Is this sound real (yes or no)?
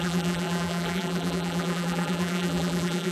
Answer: no